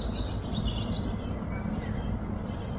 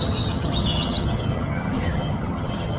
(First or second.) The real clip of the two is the first